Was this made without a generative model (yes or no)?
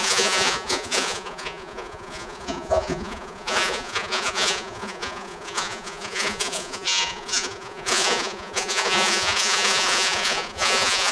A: no